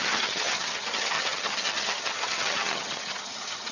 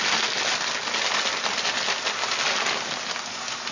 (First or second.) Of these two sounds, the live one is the second